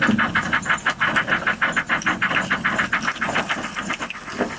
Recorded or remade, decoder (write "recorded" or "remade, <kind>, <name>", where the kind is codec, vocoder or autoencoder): recorded